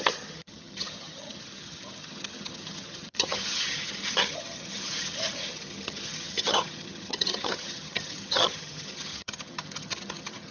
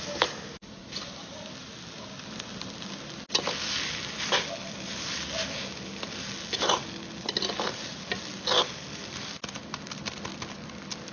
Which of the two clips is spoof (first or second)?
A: first